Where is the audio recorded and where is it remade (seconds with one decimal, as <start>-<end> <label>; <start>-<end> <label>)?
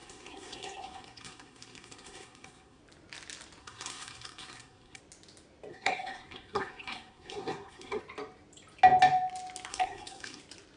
0.0-2.8 remade; 2.8-3.6 recorded; 3.6-5.0 remade; 5.0-5.7 recorded; 5.7-8.0 remade; 8.0-9.7 recorded; 9.7-10.4 remade; 10.4-10.8 recorded